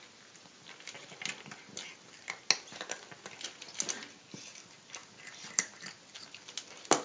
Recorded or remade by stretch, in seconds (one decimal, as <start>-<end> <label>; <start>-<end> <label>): 0.0-7.0 recorded